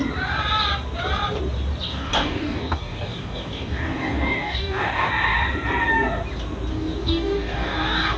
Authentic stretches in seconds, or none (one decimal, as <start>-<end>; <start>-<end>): 0.0-1.9; 5.1-6.7